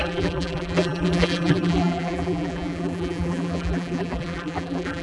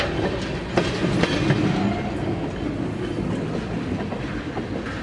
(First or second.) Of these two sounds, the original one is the second